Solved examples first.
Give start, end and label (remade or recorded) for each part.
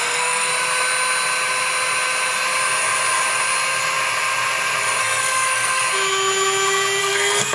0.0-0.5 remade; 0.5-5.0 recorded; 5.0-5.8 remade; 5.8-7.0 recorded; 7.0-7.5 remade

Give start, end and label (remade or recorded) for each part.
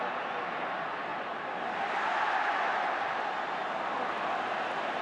0.0-5.0 recorded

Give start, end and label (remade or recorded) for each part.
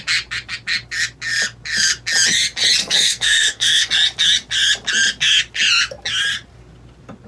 0.0-2.8 recorded; 2.8-3.9 remade; 3.9-7.3 recorded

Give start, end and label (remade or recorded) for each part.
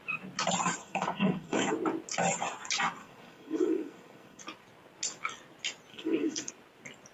0.0-0.8 recorded; 0.8-1.7 remade; 1.7-3.0 recorded; 3.0-4.4 remade; 4.4-5.9 recorded; 5.9-6.5 remade; 6.5-7.1 recorded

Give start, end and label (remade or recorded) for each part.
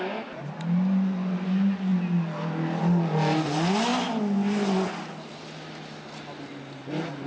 0.0-7.3 recorded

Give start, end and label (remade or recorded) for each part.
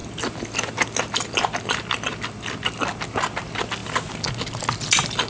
0.0-5.3 recorded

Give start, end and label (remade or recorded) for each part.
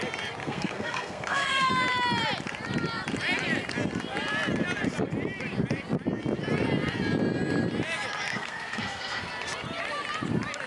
0.0-0.4 recorded; 0.4-1.7 remade; 1.7-8.3 recorded; 8.3-9.3 remade; 9.3-10.7 recorded